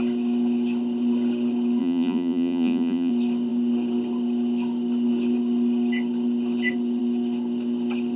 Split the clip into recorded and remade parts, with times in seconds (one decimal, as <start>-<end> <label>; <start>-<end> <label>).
0.0-1.8 recorded; 1.8-3.1 remade; 3.1-8.2 recorded